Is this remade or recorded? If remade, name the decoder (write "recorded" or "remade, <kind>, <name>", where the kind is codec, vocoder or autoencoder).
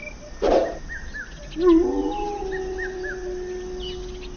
recorded